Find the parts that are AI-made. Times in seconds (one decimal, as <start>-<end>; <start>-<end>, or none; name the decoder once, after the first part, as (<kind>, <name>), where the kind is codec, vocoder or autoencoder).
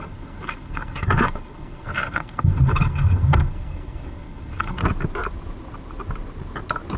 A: 0.0-4.8 (codec, SNAC)